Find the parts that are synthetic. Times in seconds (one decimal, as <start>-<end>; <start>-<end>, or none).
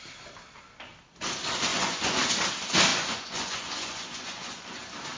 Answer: 1.7-2.2; 2.9-4.8